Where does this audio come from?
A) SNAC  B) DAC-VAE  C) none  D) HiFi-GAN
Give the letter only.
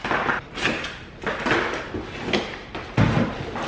C